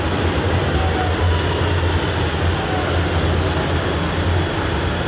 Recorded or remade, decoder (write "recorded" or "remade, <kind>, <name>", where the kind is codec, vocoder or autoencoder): recorded